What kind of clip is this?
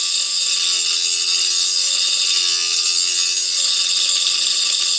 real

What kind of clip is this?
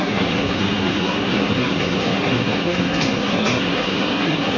fake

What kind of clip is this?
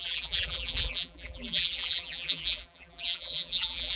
fake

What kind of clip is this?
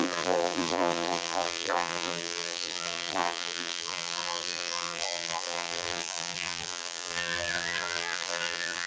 fake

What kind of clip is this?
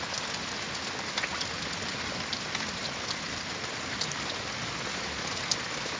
real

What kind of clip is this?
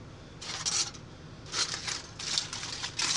real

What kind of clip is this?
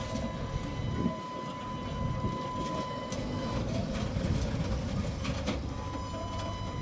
real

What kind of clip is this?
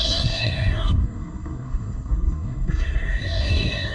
fake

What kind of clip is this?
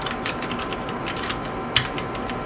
real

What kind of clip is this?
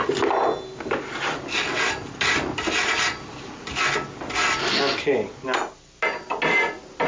real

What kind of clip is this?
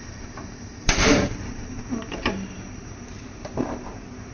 fake